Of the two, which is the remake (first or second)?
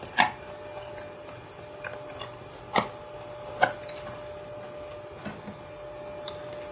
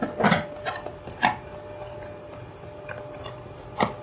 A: second